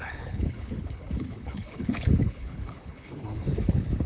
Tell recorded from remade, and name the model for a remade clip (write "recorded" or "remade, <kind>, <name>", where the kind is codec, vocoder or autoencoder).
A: remade, codec, HILCodec